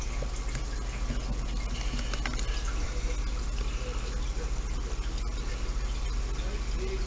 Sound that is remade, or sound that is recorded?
recorded